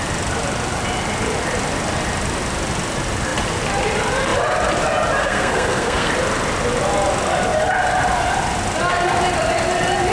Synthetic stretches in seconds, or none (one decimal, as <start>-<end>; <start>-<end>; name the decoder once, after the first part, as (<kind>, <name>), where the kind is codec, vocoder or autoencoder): 5.2-6.1 (codec, SNAC)